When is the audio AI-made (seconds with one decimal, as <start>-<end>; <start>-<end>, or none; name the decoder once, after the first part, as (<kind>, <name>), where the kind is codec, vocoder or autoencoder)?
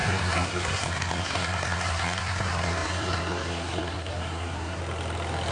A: 0.0-4.8 (codec, SNAC)